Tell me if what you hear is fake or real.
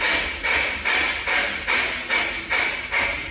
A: real